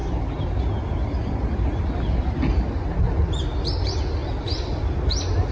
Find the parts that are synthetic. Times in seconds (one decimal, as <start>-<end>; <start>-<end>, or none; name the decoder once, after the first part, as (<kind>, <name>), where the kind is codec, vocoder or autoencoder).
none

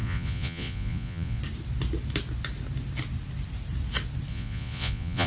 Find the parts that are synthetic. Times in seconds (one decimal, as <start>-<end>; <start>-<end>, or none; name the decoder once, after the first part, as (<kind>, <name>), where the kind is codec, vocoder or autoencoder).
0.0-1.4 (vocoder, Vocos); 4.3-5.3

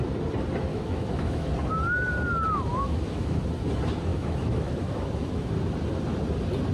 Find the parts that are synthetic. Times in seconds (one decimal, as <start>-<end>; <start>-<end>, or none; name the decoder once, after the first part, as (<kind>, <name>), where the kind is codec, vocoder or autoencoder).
0.7-1.5 (autoencoder, DAC-VAE); 2.7-3.4; 4.1-5.5

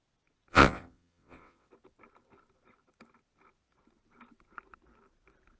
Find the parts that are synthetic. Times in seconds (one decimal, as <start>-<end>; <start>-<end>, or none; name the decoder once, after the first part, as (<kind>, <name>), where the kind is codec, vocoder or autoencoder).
0.5-1.7 (vocoder, WaveNeXt)

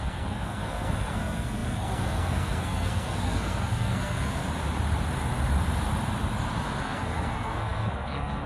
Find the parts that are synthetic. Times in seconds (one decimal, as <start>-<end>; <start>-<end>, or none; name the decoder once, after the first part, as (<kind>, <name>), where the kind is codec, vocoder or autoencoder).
0.0-4.4 (codec, SNAC); 6.8-8.5

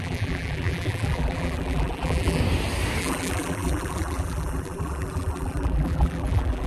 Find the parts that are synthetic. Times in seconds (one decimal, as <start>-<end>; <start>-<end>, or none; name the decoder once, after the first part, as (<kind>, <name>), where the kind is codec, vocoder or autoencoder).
0.0-2.4 (vocoder, BigVGAN v2); 3.0-6.7

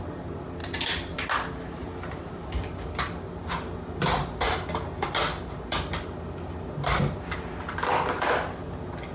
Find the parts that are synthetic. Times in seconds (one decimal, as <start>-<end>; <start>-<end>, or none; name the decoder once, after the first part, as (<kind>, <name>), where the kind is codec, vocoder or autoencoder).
none

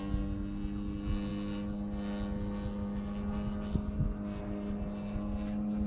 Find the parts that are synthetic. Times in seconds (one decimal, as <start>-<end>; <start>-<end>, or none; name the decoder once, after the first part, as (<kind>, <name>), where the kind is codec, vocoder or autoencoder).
none